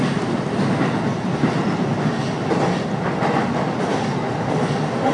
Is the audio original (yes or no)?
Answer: yes